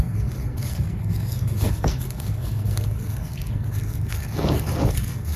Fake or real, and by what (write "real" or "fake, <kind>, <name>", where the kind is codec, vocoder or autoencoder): fake, codec, SNAC